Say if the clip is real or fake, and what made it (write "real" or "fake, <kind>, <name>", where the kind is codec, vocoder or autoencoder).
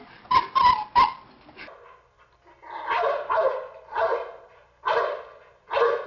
real